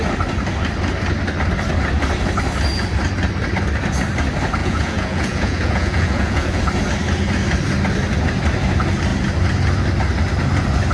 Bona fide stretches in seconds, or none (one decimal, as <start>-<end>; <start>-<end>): 0.0-4.6; 6.6-10.9